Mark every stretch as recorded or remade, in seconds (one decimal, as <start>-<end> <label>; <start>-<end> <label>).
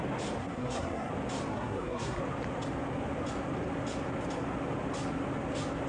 0.0-0.4 recorded; 0.4-1.1 remade; 1.1-1.5 recorded; 1.5-2.2 remade; 2.2-5.9 recorded